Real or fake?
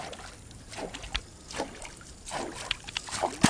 real